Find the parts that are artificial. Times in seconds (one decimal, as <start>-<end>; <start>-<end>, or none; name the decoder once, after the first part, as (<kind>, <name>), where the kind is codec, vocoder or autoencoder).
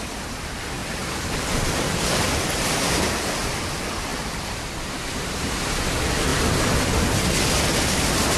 0.8-3.6 (vocoder, BigVGAN v2); 4.1-5.2